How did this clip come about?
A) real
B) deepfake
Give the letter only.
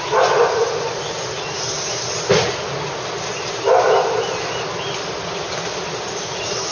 A